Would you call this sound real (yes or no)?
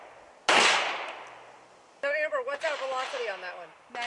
yes